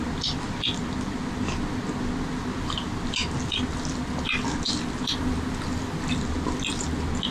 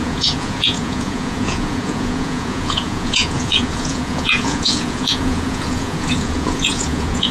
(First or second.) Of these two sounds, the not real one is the second